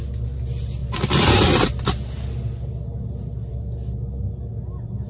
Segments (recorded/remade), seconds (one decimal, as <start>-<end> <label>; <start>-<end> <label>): 0.0-0.8 recorded; 0.8-1.3 remade; 1.3-5.1 recorded